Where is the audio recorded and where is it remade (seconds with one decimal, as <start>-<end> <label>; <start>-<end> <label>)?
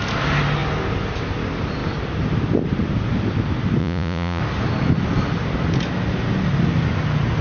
0.0-3.8 recorded; 3.8-4.4 remade; 4.4-7.4 recorded